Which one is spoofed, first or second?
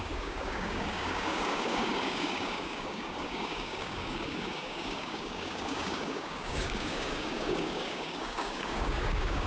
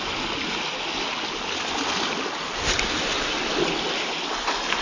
first